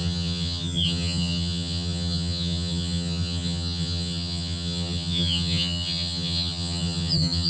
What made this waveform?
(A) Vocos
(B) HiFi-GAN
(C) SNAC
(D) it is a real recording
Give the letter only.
B